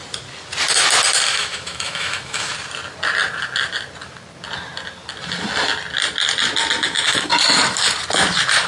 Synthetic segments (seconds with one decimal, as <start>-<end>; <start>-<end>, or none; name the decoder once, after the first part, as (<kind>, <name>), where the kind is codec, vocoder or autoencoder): 1.3-2.5 (autoencoder, DAC-VAE); 6.8-7.3